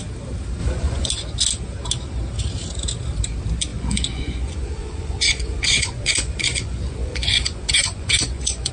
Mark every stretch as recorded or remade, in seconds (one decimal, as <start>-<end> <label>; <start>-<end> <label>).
0.0-0.6 recorded; 0.6-1.1 remade; 1.1-3.7 recorded; 3.7-8.7 remade

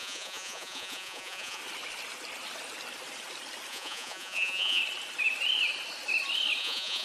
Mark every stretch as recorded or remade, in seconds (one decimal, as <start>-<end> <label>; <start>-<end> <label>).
0.0-1.6 remade; 1.6-3.7 recorded; 3.7-4.8 remade; 4.8-6.6 recorded; 6.6-7.0 remade

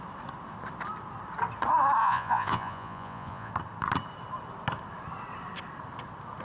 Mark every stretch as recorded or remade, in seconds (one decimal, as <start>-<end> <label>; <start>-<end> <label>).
0.0-2.0 recorded; 2.0-3.5 remade; 3.5-6.4 recorded

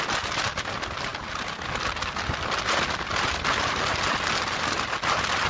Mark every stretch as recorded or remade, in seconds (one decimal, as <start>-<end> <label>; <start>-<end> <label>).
0.0-5.5 recorded

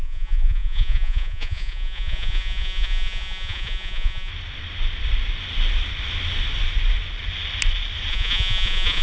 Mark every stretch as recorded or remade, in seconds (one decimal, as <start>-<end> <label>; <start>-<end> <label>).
0.0-4.3 remade; 4.3-8.1 recorded; 8.1-9.0 remade

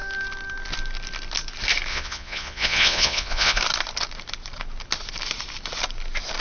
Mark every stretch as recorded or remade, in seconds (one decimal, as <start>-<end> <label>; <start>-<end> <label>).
0.0-1.9 recorded; 1.9-3.6 remade; 3.6-6.4 recorded